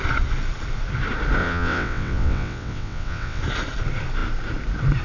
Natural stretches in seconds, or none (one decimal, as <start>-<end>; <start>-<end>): 0.0-1.4; 3.4-5.0